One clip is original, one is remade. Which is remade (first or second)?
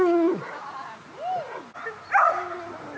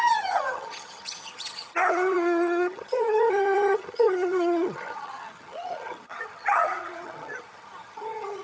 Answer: second